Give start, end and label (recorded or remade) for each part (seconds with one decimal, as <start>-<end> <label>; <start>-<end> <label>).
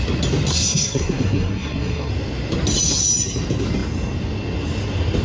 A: 0.0-0.5 recorded; 0.5-2.1 remade; 2.1-5.2 recorded